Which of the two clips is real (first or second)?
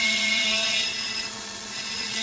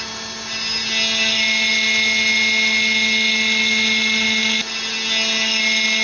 second